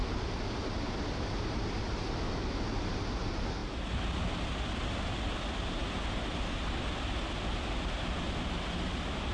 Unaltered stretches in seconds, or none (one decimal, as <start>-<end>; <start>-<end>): 0.0-9.3